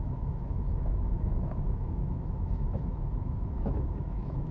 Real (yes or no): no